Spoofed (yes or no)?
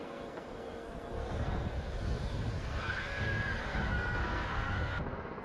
yes